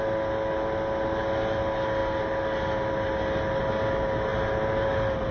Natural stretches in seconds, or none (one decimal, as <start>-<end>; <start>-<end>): 0.0-5.3